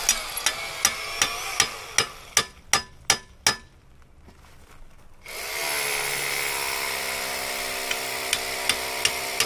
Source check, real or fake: real